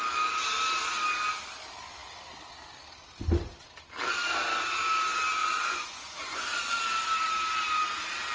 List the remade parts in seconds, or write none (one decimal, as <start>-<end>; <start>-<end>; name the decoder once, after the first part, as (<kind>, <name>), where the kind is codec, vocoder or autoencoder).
5.4-6.8 (vocoder, Vocos)